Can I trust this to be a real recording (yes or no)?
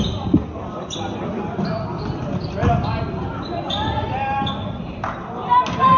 yes